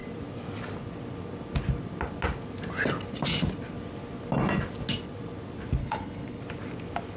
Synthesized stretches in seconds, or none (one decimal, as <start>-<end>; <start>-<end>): 5.8-6.4